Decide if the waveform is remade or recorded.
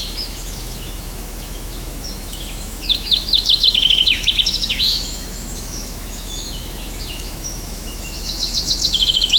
remade